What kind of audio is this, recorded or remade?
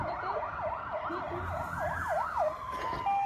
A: recorded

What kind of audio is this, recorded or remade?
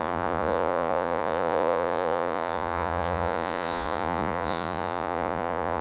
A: remade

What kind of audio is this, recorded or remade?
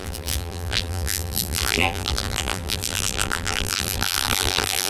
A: remade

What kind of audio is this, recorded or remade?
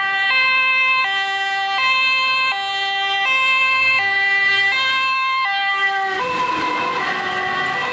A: recorded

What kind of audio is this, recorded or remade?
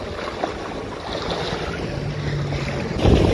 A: recorded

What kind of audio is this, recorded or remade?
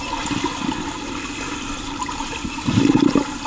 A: recorded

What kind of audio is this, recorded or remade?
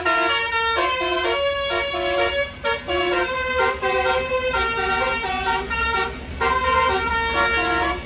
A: recorded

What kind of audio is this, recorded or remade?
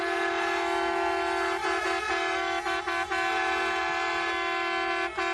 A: recorded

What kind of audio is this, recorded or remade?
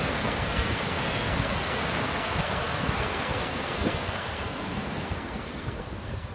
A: remade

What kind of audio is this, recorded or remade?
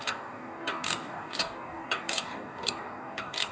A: remade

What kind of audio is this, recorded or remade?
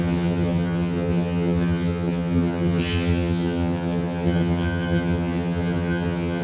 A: remade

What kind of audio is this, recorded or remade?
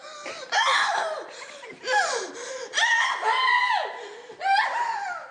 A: recorded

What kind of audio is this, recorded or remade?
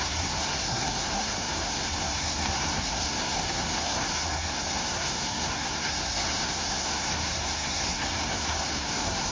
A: remade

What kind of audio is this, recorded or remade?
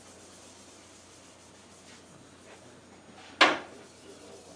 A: recorded